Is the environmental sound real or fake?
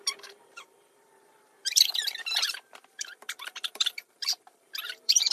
fake